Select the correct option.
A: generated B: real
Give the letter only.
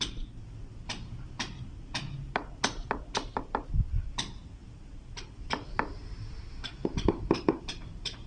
B